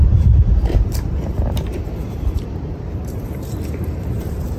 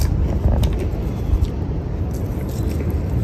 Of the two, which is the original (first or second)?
second